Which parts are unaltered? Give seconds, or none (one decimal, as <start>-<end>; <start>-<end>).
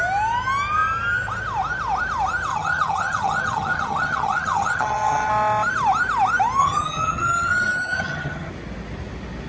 0.0-2.5; 5.3-6.6; 8.5-9.5